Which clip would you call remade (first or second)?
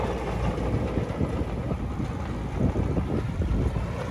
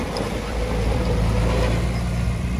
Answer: second